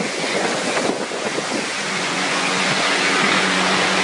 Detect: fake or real fake